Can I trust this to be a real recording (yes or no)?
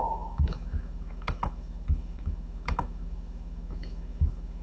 no